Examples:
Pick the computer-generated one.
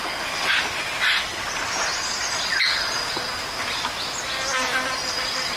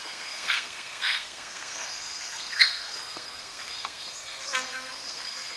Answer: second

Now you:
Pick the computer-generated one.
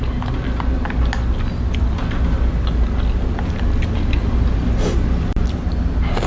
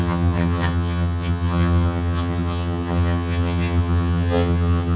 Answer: second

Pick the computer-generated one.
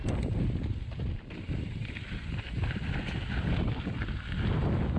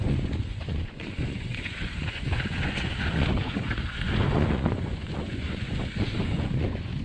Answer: second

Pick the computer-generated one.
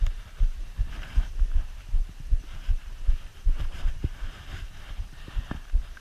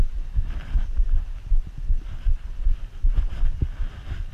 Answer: first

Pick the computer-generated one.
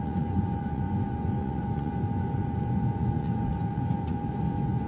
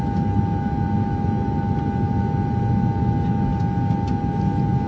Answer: first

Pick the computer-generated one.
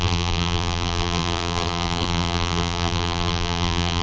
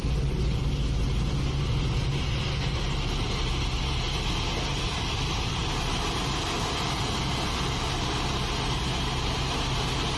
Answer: first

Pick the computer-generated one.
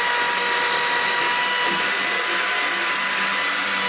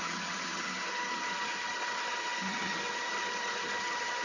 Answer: second